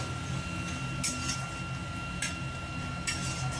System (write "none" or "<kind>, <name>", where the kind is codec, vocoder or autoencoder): none